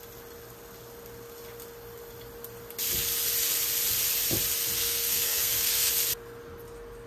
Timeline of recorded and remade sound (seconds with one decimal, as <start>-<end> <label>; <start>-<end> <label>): 0.0-4.8 recorded; 4.8-5.9 remade; 5.9-7.1 recorded